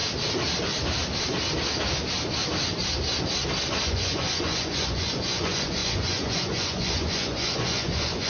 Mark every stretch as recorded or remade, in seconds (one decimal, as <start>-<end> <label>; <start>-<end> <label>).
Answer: 0.0-3.8 recorded; 3.8-8.3 remade